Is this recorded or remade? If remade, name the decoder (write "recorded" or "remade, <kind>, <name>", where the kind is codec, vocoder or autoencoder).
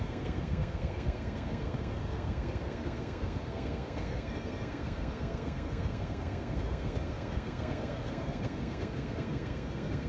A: remade, codec, SNAC